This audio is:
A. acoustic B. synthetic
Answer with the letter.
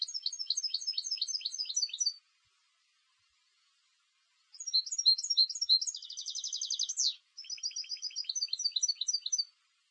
A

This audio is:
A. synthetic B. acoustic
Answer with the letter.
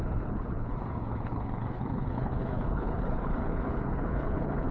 A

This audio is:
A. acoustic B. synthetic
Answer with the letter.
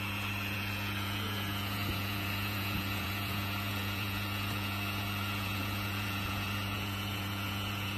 B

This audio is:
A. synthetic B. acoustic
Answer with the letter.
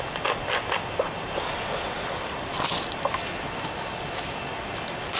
B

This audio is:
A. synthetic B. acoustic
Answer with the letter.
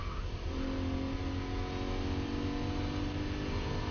B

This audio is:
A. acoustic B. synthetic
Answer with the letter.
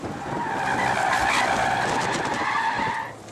A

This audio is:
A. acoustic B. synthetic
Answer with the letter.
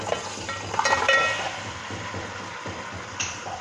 A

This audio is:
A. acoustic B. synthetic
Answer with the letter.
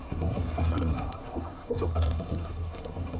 B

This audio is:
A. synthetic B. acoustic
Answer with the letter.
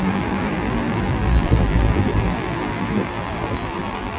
A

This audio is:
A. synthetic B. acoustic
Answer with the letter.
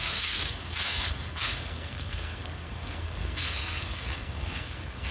A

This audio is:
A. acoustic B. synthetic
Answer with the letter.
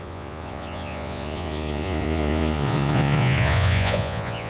B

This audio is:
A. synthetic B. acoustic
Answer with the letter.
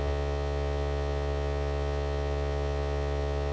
B